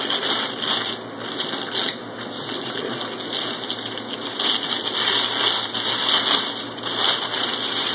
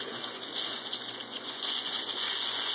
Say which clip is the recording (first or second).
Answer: first